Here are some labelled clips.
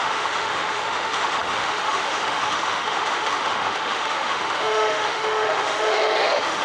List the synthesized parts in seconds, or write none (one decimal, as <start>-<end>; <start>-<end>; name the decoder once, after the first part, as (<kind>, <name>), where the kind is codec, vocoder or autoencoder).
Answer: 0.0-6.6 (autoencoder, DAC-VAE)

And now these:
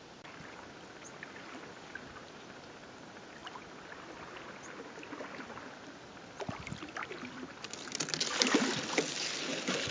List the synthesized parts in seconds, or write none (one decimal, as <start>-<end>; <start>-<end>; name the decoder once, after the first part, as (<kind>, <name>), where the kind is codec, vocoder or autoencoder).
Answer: none

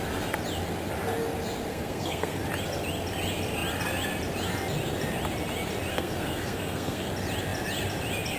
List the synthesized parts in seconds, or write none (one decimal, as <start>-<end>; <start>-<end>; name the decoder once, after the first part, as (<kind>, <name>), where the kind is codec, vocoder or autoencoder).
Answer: 1.7-2.4 (codec, SNAC); 5.9-7.1